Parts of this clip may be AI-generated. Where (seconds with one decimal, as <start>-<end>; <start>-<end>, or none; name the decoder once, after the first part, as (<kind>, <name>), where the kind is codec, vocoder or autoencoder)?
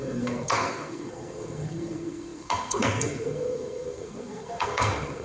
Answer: 0.0-5.2 (codec, SNAC)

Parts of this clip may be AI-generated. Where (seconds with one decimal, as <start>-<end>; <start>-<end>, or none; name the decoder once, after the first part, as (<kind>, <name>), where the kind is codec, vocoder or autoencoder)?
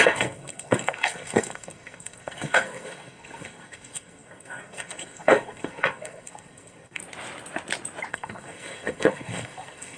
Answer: 0.0-7.0 (codec, SNAC); 8.1-10.0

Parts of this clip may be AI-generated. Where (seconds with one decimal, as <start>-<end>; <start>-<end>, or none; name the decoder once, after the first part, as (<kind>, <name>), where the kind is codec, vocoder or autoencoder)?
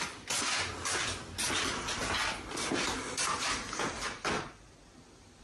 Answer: none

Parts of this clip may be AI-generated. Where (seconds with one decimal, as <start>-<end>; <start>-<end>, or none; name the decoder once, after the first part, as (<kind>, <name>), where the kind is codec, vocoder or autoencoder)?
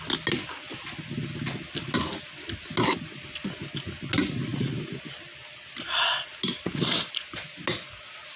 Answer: none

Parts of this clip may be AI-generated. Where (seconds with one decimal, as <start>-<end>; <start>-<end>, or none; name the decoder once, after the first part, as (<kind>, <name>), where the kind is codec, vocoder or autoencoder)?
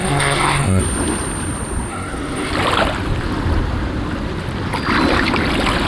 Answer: 0.0-0.8 (codec, SNAC); 1.9-2.5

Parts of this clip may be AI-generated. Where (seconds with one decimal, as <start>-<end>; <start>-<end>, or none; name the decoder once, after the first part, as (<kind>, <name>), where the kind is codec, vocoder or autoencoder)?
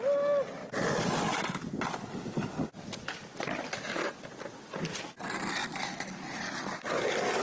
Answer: none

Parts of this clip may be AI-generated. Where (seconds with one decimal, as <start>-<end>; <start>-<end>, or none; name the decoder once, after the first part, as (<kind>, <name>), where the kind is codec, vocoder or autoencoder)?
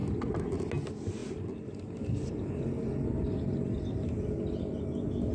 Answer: none